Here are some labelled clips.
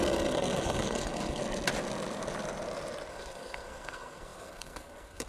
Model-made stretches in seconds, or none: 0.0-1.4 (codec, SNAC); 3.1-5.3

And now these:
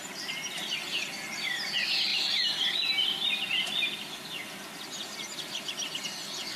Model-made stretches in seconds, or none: none

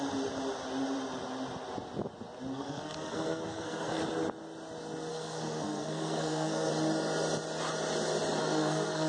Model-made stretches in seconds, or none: 2.5-4.0 (codec, SNAC); 5.1-6.7; 8.4-9.1

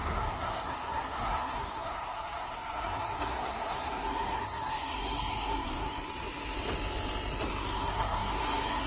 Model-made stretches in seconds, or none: 0.0-5.9 (codec, SNAC); 7.8-8.9